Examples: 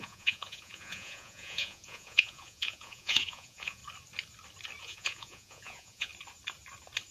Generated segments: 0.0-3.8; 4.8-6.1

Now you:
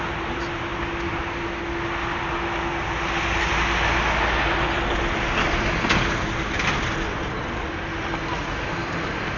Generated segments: none

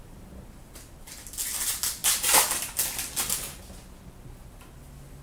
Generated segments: none

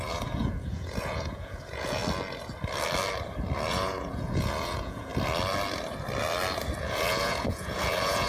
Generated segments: 0.0-2.0; 3.7-5.1; 6.8-8.3